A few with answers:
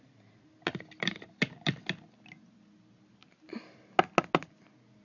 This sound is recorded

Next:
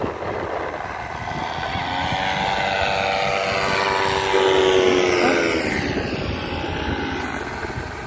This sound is recorded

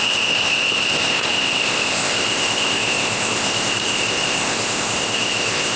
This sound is remade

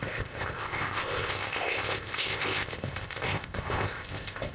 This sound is remade